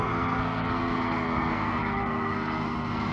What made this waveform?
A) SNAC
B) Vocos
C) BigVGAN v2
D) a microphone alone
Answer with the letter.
A